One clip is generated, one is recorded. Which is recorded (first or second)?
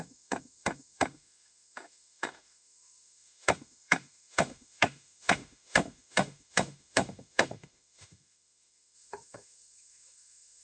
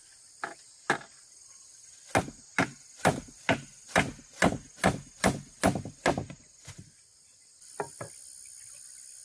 second